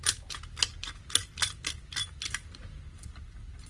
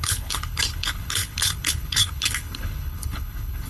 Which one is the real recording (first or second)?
first